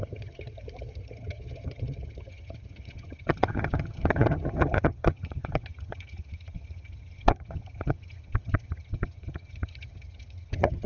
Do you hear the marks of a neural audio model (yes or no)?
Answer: yes